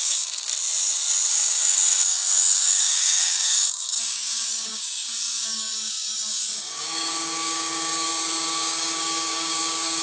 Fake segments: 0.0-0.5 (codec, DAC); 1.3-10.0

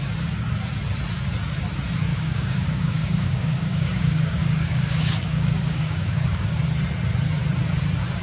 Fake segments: 2.1-6.6 (codec, DAC)